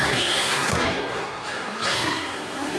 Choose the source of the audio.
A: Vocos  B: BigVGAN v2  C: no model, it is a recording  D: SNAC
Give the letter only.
D